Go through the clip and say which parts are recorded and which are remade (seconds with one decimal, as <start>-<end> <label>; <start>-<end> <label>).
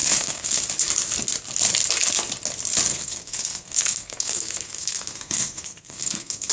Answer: 0.0-0.6 remade; 0.6-2.9 recorded; 2.9-6.5 remade